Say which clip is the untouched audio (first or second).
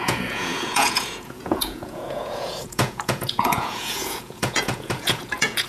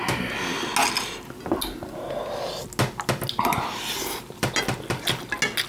second